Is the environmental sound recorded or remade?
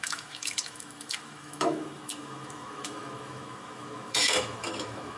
remade